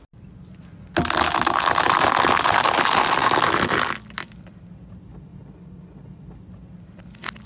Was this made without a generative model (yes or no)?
yes